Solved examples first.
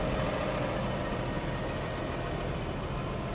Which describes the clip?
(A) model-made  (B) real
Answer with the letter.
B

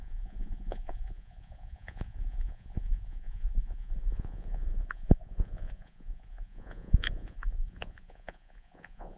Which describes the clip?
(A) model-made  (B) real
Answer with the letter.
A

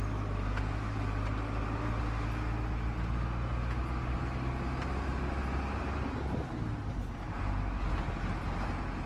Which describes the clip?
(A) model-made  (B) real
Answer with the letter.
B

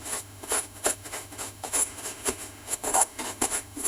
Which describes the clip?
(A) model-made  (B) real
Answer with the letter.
A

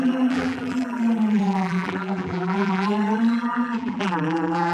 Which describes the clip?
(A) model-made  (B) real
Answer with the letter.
A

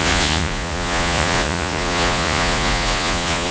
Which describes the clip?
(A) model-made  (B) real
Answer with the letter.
A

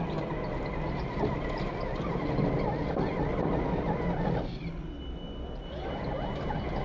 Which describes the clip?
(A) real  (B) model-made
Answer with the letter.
A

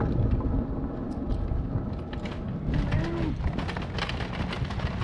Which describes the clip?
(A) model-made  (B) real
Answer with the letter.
B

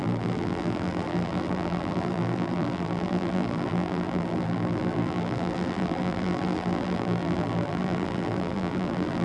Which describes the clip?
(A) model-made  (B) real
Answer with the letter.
A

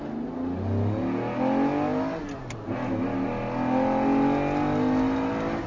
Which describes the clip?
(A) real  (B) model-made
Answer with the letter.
A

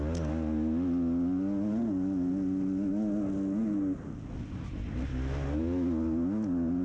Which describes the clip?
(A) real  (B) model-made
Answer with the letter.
A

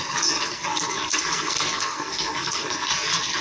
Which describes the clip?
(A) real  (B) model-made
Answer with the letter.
B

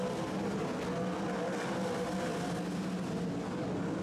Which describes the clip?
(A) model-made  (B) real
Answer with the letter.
B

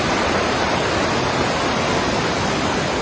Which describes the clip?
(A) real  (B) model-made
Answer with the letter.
A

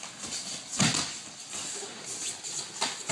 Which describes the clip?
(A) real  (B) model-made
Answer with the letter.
A